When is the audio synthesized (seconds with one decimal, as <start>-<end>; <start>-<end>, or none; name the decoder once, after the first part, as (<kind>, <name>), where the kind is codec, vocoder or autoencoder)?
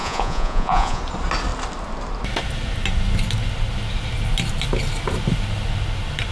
0.0-1.0 (vocoder, Vocos)